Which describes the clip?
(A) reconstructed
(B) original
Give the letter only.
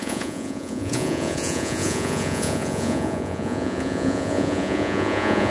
A